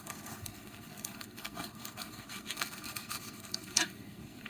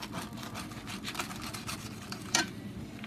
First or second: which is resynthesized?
first